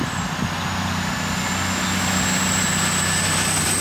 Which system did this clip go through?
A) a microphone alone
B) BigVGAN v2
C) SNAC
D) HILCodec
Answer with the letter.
A